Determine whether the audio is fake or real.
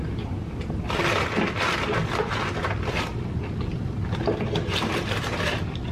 real